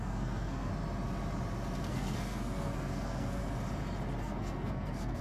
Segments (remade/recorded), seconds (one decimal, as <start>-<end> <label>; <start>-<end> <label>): 0.0-0.7 remade; 0.7-1.9 recorded; 1.9-3.4 remade; 3.4-4.2 recorded; 4.2-5.2 remade